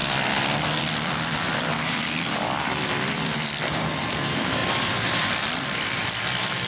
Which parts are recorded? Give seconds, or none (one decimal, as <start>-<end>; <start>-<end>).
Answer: 0.0-0.8